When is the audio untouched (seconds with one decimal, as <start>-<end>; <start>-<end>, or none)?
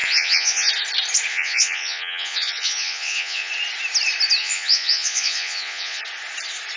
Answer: 0.7-1.3; 3.5-4.4; 6.0-6.8